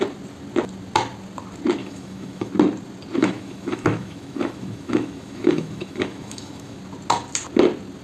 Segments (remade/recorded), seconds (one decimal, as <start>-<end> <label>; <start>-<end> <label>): 0.0-1.8 recorded; 1.8-2.5 remade; 2.5-3.2 recorded; 3.2-6.8 remade; 6.8-8.0 recorded